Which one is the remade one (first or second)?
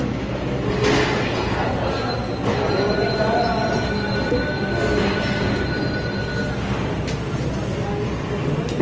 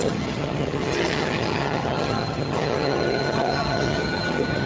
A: second